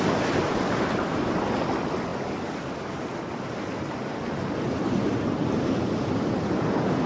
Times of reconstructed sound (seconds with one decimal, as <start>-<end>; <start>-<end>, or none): none

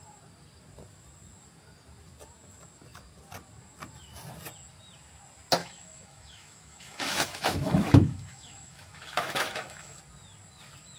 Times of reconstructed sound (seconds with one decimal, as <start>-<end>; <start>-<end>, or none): 5.6-10.0

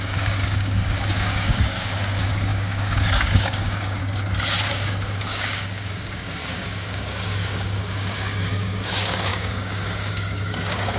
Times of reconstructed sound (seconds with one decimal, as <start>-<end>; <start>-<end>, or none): 0.0-4.0; 4.7-11.0

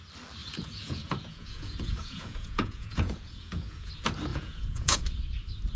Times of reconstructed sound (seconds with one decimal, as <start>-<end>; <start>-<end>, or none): 0.4-3.9; 4.3-5.0

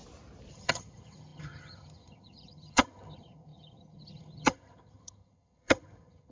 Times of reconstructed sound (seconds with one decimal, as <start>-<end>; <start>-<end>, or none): 0.5-6.3

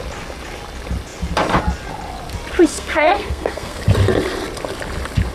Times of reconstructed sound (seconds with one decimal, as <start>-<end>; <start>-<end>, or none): 2.7-3.8

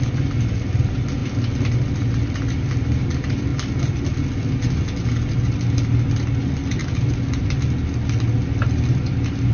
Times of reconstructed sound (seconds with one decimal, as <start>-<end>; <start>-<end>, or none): none